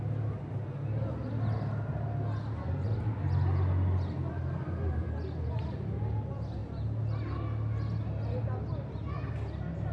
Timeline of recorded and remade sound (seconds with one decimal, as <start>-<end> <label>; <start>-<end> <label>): 0.0-9.9 recorded